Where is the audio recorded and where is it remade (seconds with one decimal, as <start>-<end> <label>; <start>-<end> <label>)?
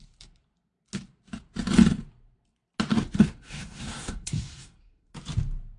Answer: 0.0-2.9 recorded; 2.9-5.1 remade; 5.1-5.8 recorded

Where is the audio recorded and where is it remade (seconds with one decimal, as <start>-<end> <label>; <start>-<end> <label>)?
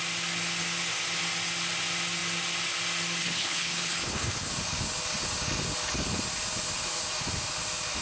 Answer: 0.0-3.2 recorded; 3.2-4.5 remade; 4.5-8.0 recorded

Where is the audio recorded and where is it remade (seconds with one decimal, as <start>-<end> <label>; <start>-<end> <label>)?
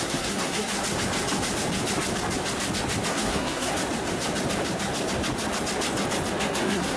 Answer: 0.0-0.7 remade; 0.7-3.1 recorded; 3.1-3.7 remade; 3.7-6.4 recorded; 6.4-7.0 remade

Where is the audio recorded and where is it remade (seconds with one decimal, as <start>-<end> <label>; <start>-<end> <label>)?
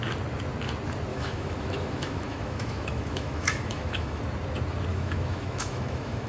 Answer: 0.0-1.1 recorded; 1.1-4.2 remade; 4.2-4.9 recorded; 4.9-6.3 remade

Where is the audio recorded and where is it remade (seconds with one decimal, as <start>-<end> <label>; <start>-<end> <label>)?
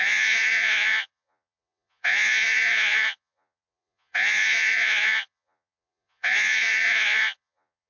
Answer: 0.0-7.9 remade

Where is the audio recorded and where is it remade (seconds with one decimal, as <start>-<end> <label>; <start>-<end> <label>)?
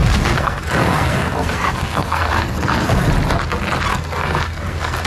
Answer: 0.0-3.1 remade; 3.1-3.9 recorded; 3.9-5.1 remade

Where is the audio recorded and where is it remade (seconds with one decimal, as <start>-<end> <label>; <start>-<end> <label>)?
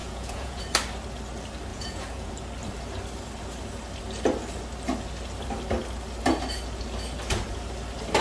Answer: 0.0-0.6 remade; 0.6-1.7 recorded; 1.7-2.3 remade; 2.3-8.2 recorded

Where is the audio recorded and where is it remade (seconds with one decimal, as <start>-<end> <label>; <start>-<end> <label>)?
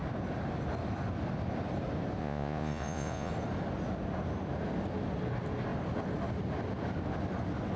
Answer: 0.0-2.2 recorded; 2.2-3.3 remade; 3.3-7.8 recorded